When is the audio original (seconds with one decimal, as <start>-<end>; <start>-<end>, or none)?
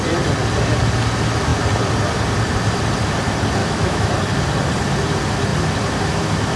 0.0-3.6; 4.1-6.6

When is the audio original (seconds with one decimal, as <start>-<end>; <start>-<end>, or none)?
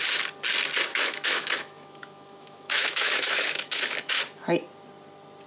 0.0-0.9; 4.2-5.5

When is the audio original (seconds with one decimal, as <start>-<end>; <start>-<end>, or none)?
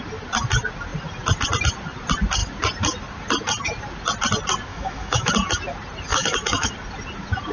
0.0-4.7; 5.3-6.1; 6.7-7.5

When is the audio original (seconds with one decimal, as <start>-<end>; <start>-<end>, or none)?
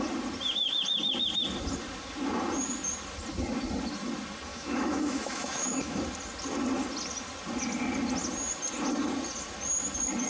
0.0-4.5; 6.0-10.3